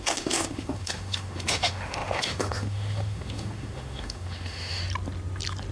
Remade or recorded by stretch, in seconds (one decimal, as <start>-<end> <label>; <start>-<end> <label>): 0.0-4.8 remade; 4.8-5.7 recorded